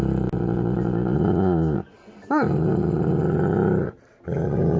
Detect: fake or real real